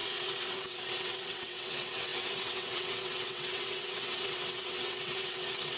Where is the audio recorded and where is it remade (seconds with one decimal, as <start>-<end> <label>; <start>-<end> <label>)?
0.0-5.8 remade